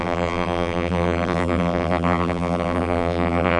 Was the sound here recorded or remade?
remade